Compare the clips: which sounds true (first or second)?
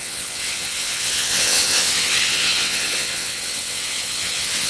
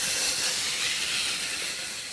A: second